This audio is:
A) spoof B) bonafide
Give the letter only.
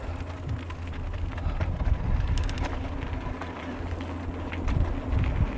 B